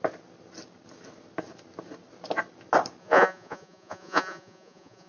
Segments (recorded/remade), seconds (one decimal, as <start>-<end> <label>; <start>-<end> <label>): 0.0-3.0 recorded; 3.0-5.1 remade